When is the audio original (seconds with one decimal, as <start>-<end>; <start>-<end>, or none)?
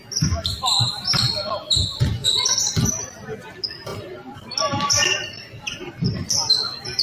none